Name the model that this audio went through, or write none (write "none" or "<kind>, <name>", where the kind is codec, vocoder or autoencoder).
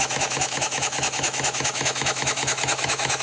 autoencoder, DAC-VAE